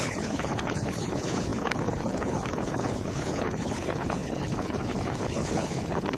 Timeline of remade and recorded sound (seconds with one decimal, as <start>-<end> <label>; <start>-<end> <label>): 0.0-6.2 remade